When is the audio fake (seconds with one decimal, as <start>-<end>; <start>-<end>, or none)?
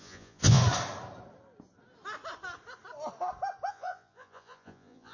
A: 0.0-0.6; 3.7-5.1